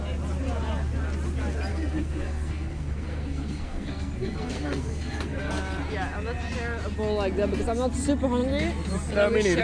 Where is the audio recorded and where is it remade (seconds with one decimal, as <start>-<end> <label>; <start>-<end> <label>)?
0.0-1.7 recorded; 1.7-5.5 remade; 5.5-9.6 recorded